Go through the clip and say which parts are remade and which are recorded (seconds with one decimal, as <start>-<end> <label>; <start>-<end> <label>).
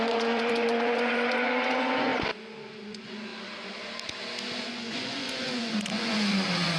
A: 0.0-2.1 remade; 2.1-2.8 recorded; 2.8-3.3 remade; 3.3-4.6 recorded; 4.6-6.8 remade